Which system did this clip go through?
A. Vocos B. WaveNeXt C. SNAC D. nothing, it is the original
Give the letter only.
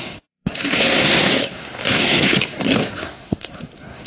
C